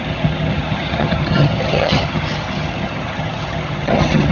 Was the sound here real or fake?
fake